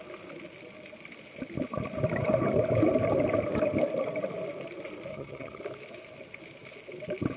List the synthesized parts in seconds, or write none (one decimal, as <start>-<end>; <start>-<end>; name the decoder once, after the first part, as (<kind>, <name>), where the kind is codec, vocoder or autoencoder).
5.1-5.6 (vocoder, HiFi-GAN)